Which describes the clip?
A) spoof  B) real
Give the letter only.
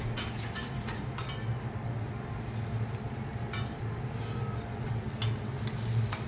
B